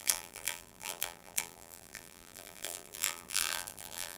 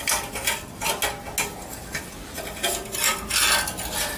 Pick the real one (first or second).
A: second